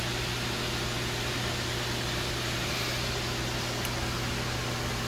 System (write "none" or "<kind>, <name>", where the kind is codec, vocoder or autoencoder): none